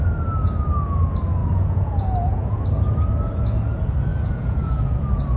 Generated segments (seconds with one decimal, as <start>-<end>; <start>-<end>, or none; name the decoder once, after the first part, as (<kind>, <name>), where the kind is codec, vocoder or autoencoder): 1.4-2.6 (vocoder, Vocos); 4.1-5.0